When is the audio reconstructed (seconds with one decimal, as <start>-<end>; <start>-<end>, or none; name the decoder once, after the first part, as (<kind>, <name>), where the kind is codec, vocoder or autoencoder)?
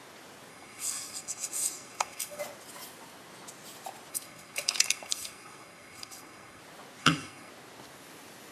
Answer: 0.5-2.4 (codec, SNAC); 4.1-6.6; 7.0-7.5